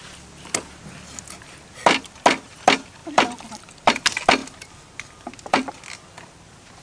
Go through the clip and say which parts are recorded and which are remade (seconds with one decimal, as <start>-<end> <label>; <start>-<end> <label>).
0.0-3.0 recorded; 3.0-3.9 remade; 3.9-4.4 recorded; 4.4-5.8 remade; 5.8-6.8 recorded